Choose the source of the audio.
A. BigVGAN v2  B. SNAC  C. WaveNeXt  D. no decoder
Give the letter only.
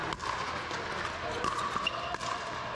D